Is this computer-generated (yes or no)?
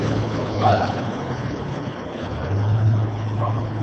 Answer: yes